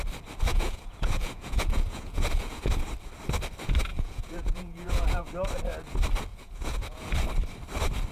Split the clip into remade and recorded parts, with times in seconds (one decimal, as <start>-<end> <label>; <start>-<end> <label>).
0.0-0.5 recorded; 0.5-2.7 remade; 2.7-3.9 recorded; 3.9-5.3 remade; 5.3-6.3 recorded; 6.3-7.1 remade; 7.1-8.1 recorded